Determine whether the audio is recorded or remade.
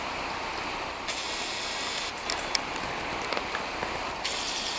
recorded